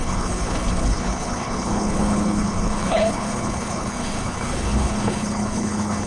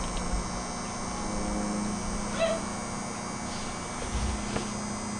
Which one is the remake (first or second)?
first